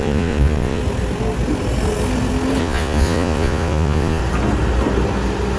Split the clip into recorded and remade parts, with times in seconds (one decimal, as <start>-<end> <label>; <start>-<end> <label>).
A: 0.0-0.8 remade; 0.8-2.6 recorded; 2.6-4.2 remade; 4.2-5.6 recorded